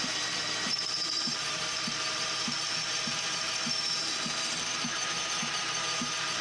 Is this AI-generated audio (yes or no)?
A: yes